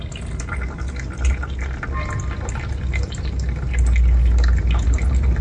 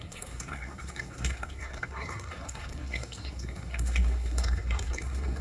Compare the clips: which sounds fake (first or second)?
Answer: second